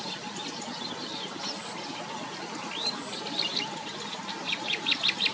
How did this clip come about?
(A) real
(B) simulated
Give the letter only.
A